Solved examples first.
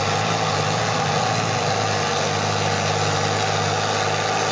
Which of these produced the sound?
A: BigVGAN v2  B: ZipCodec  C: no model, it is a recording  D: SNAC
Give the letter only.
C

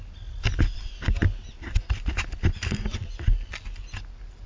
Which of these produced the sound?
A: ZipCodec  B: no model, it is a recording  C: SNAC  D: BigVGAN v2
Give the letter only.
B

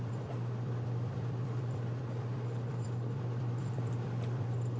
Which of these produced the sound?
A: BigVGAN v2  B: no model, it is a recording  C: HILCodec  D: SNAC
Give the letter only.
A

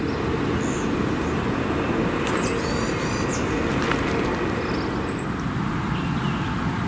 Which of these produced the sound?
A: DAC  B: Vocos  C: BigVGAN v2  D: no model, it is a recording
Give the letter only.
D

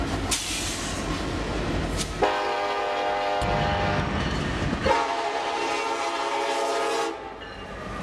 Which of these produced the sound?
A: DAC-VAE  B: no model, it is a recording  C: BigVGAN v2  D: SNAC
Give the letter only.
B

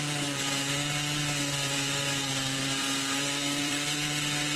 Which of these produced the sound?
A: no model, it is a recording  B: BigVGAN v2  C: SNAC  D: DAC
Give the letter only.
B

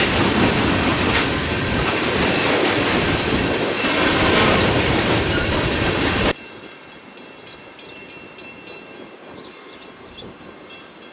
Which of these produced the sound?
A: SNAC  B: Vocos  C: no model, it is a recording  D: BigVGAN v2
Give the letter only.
D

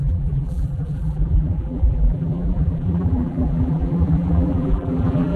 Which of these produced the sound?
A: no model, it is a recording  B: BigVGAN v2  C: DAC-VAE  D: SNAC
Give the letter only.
B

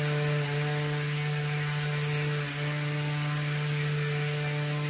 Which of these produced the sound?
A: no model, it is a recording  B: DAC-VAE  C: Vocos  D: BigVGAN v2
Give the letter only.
A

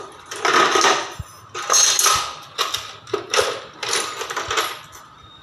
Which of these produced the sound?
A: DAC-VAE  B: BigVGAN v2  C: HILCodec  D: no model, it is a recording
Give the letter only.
D